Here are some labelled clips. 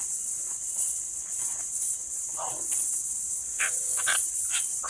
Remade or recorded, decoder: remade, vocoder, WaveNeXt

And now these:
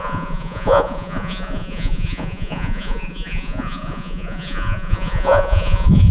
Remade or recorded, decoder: remade, vocoder, Vocos